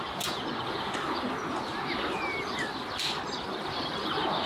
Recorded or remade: recorded